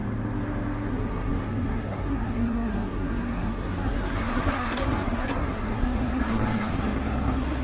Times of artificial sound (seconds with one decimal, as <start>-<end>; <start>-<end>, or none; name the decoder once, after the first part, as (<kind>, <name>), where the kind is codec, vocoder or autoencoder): 0.9-7.6 (codec, SNAC)